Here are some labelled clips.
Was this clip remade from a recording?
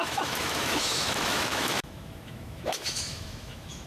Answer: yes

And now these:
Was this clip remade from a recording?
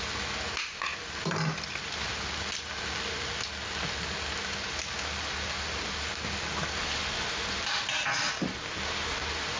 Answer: no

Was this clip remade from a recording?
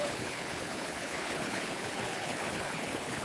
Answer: yes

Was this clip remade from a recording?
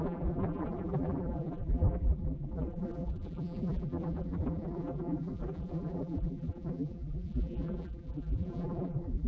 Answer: yes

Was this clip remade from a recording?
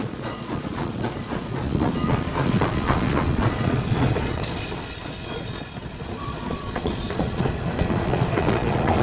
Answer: yes